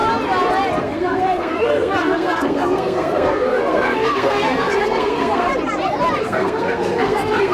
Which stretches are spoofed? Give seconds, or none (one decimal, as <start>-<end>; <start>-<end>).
0.8-5.5; 6.2-7.5